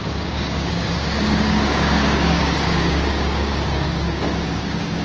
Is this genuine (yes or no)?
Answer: no